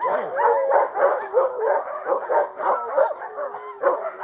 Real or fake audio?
real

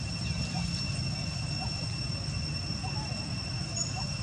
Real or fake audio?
real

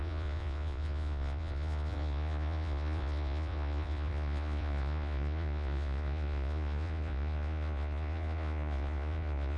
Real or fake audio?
fake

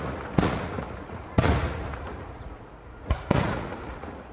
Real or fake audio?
fake